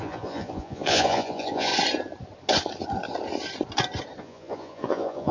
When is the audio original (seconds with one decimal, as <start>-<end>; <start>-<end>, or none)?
1.7-4.2